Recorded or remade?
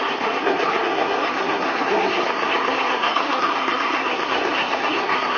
remade